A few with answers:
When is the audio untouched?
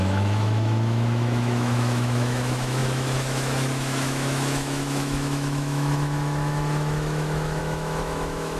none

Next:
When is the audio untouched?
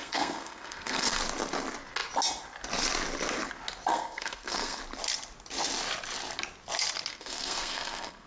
1.2-3.9; 4.8-7.1